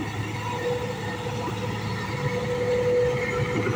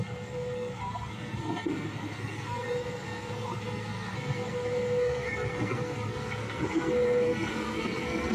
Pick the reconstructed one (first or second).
second